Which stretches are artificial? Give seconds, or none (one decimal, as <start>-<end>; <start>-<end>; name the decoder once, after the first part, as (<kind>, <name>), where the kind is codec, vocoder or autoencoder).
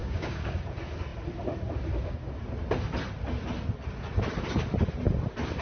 0.0-0.6 (codec, DAC)